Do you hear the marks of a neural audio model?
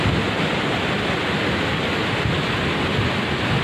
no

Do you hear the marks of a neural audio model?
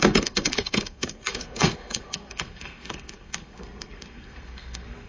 yes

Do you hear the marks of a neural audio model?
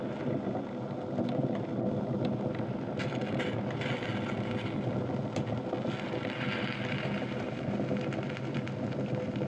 no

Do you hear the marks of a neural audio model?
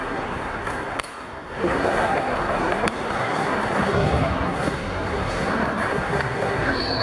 yes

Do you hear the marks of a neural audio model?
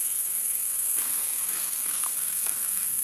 yes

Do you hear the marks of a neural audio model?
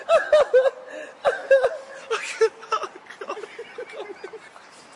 no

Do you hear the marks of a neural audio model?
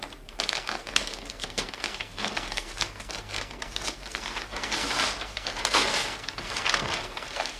yes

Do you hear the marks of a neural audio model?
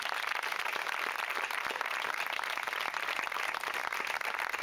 no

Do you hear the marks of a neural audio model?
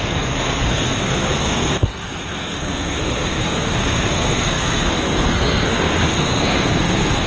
yes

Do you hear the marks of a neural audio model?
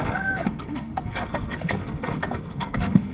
yes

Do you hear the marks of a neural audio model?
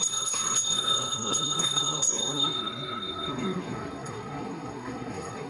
yes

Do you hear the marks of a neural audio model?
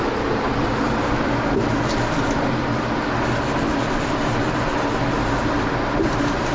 no